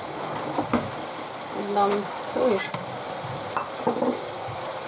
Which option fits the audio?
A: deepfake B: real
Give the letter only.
B